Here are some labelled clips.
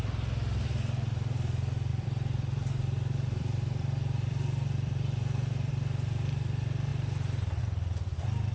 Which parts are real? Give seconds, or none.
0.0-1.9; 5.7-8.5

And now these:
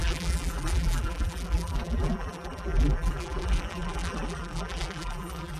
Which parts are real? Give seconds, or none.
none

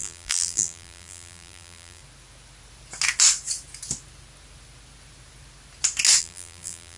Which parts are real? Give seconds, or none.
2.0-6.2

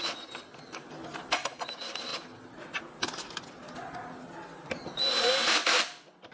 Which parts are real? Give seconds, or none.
0.0-6.3